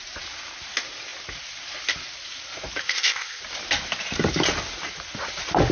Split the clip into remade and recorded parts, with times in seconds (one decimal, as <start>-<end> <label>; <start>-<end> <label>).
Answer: 0.0-2.8 recorded; 2.8-3.4 remade; 3.4-5.7 recorded